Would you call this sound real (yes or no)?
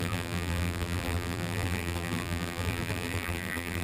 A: no